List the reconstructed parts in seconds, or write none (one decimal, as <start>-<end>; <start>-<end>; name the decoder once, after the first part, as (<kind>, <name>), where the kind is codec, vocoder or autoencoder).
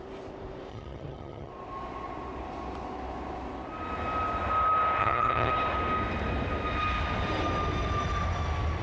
0.7-1.5 (vocoder, HiFi-GAN); 5.0-5.5